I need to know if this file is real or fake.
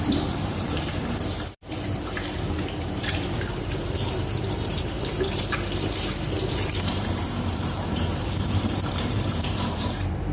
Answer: fake